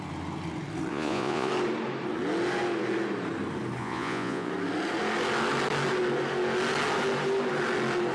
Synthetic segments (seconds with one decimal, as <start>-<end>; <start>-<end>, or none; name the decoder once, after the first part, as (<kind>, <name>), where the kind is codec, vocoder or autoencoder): 0.9-1.5 (vocoder, Vocos); 3.8-4.5